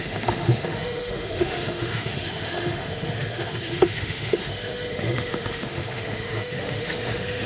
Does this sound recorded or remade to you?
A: remade